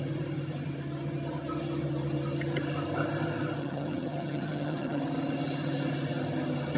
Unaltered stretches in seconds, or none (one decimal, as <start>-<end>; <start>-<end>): 0.0-3.6; 5.0-6.8